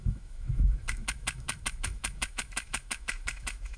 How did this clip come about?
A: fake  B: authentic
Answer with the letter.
A